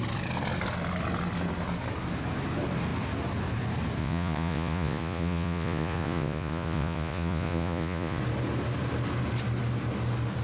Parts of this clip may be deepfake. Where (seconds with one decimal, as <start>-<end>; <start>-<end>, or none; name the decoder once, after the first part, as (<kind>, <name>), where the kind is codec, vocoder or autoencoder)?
4.0-8.2 (vocoder, Vocos)